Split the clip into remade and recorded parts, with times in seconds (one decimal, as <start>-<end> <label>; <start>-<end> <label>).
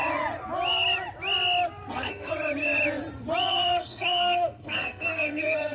0.0-1.9 recorded; 1.9-2.3 remade; 2.3-3.5 recorded; 3.5-5.7 remade